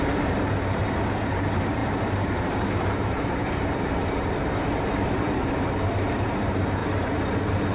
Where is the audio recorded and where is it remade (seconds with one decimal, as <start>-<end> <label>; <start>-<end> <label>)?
0.0-6.8 remade; 6.8-7.7 recorded